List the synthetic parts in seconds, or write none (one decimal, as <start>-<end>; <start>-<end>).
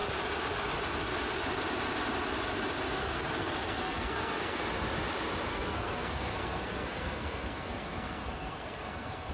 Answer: 3.0-4.6; 5.5-9.3